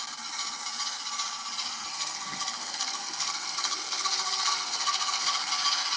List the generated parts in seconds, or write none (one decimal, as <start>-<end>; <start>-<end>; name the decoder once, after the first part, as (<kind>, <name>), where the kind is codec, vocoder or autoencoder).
1.9-5.5 (codec, SNAC)